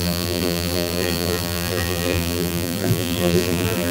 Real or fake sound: fake